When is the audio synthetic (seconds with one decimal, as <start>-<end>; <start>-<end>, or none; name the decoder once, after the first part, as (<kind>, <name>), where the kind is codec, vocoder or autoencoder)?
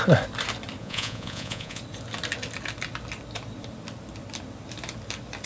0.8-1.8 (vocoder, Vocos)